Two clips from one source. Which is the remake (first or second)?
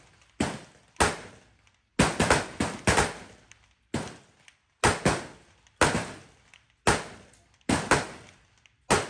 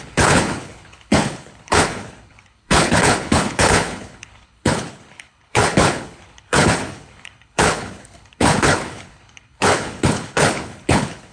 second